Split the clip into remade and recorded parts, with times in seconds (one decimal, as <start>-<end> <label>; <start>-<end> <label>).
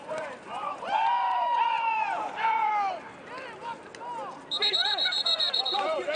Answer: 0.0-2.7 remade; 2.7-4.7 recorded; 4.7-6.2 remade